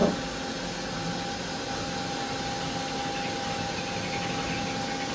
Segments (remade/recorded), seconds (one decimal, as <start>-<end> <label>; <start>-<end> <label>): 0.0-5.1 recorded